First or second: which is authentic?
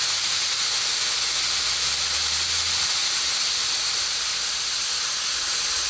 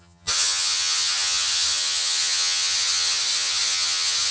first